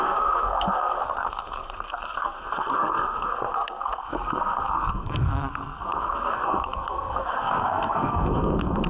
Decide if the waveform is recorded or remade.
remade